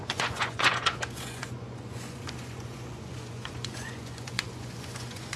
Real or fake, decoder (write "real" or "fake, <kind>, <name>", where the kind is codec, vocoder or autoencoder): fake, vocoder, Vocos